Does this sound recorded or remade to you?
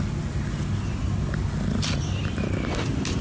recorded